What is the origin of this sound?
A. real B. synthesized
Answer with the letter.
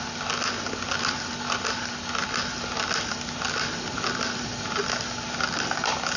A